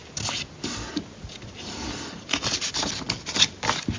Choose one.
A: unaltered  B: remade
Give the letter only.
A